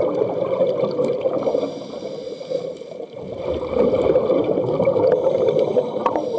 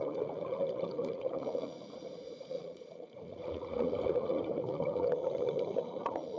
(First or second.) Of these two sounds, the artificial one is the second